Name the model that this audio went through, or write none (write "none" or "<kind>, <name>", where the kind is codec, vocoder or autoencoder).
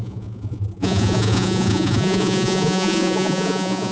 vocoder, Vocos